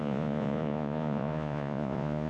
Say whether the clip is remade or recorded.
remade